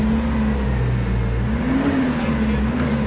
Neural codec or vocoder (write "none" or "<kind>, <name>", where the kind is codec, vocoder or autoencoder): none